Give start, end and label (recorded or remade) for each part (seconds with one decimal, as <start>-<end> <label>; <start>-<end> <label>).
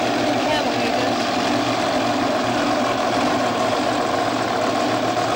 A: 0.0-5.4 recorded